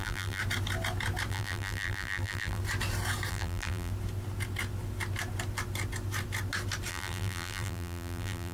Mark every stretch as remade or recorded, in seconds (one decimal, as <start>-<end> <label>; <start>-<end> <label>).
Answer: 0.0-0.4 remade; 0.4-1.3 recorded; 1.3-2.6 remade; 2.6-3.3 recorded; 3.3-3.9 remade; 3.9-6.9 recorded; 6.9-8.5 remade